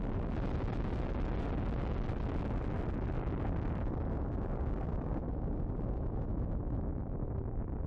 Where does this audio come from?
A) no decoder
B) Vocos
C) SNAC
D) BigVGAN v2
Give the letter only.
A